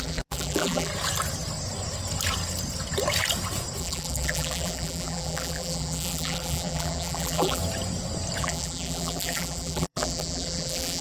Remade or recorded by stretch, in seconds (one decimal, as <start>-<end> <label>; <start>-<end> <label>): 0.0-0.9 remade; 0.9-3.8 recorded; 3.8-7.6 remade; 7.6-8.4 recorded; 8.4-11.0 remade